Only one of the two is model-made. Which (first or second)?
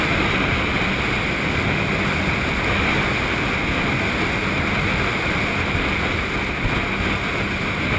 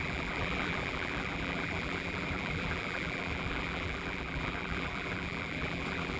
second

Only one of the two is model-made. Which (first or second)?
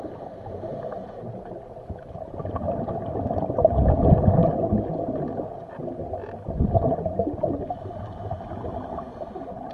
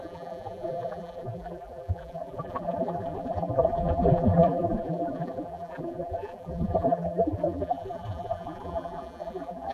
second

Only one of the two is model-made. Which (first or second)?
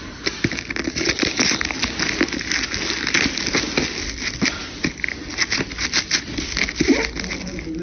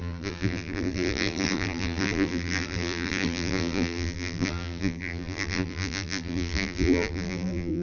second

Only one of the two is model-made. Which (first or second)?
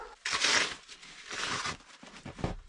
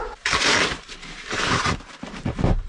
second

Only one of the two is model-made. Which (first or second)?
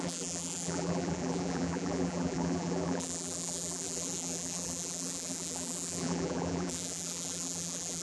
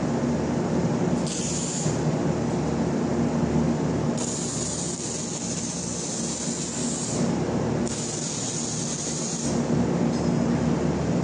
first